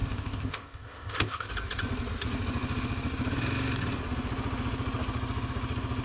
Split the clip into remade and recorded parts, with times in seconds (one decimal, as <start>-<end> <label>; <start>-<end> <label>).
0.0-1.5 remade; 1.5-6.0 recorded